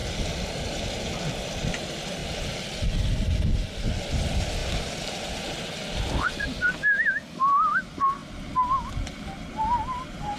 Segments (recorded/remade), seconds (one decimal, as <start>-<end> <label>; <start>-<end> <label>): 0.0-10.4 recorded